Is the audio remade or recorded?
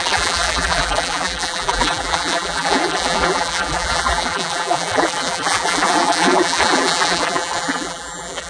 remade